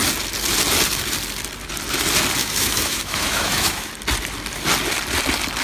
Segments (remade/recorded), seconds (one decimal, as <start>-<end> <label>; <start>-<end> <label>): 0.0-2.4 recorded; 2.4-3.9 remade; 3.9-5.6 recorded